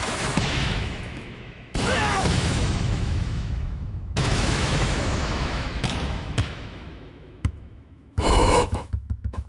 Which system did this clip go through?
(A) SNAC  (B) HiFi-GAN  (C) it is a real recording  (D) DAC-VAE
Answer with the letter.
D